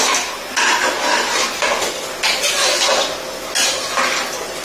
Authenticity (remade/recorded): recorded